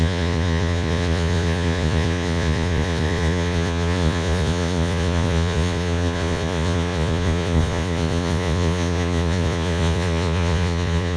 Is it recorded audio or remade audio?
remade